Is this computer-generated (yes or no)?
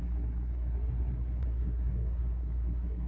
yes